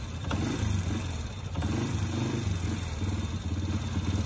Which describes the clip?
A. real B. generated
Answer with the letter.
A